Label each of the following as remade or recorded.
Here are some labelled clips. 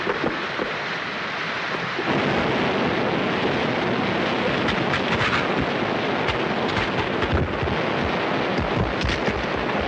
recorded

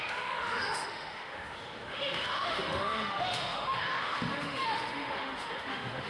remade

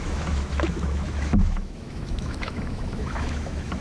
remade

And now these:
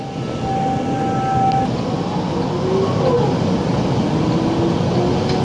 recorded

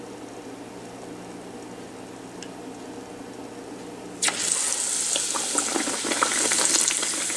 recorded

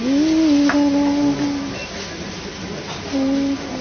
recorded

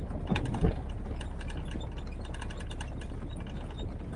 recorded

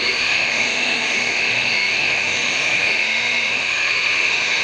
remade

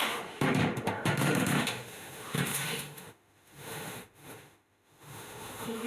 remade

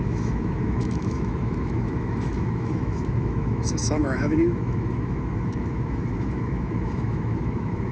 remade